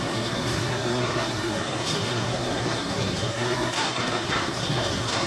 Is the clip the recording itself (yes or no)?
no